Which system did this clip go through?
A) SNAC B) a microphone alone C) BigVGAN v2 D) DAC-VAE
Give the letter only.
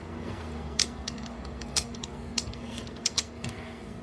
A